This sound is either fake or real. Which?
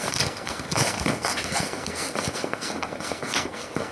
fake